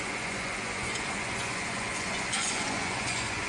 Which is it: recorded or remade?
remade